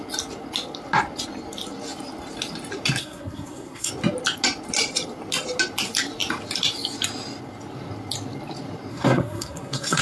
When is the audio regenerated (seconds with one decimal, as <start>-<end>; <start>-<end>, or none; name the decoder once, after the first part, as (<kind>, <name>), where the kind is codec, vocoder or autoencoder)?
3.0-3.9 (codec, SNAC); 8.9-10.0